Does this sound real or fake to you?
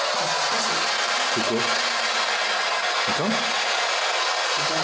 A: real